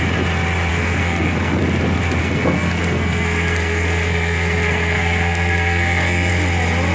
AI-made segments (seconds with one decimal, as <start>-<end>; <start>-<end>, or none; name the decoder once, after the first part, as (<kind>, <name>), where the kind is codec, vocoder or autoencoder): 0.7-1.6 (codec, SNAC); 2.2-6.3